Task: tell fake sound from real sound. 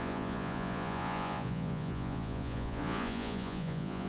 fake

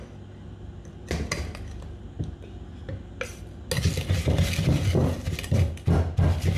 real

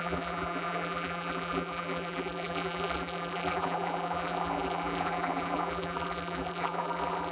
fake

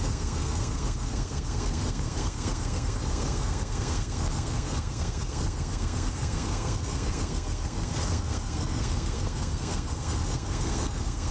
fake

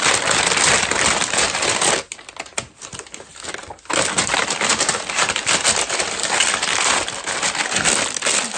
real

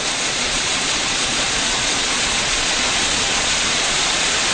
fake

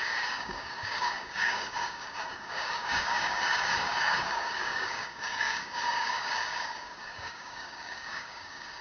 fake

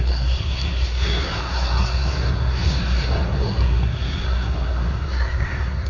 fake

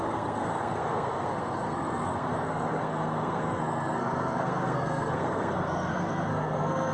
fake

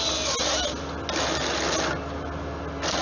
real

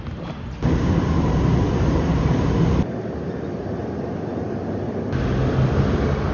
real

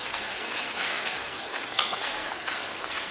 fake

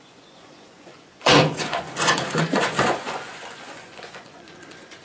fake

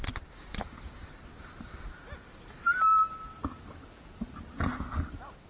real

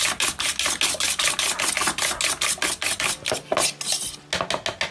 real